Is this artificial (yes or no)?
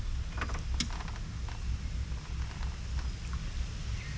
no